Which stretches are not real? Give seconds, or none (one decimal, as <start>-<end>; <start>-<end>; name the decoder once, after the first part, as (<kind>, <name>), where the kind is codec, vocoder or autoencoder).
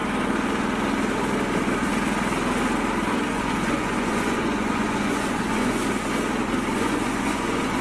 3.3-5.8 (vocoder, Vocos); 6.7-7.8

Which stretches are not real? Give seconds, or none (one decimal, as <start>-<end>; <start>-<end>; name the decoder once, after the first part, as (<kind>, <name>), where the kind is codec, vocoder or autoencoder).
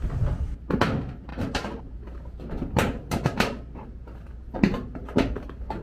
none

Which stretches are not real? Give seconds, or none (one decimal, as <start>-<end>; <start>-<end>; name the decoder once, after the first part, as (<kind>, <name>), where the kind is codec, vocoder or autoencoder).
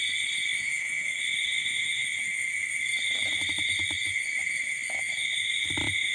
0.5-1.2 (autoencoder, DAC-VAE)